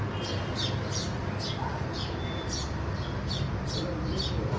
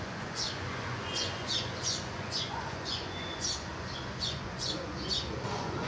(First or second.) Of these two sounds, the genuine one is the first